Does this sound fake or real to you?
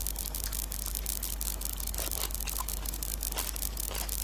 real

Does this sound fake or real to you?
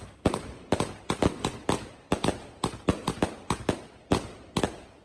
real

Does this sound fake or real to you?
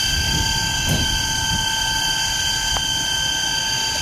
real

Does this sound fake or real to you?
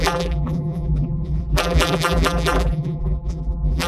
fake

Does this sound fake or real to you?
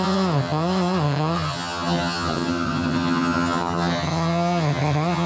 fake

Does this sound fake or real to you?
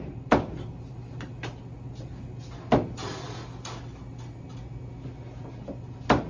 real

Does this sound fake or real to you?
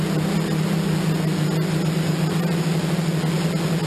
real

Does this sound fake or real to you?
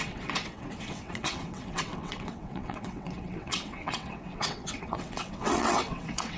fake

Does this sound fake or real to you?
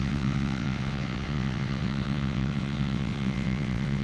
fake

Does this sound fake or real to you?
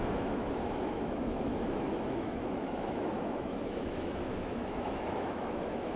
fake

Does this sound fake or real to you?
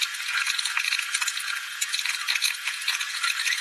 fake